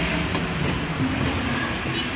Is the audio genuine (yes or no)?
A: yes